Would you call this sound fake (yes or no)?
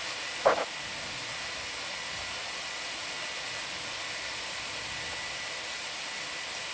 no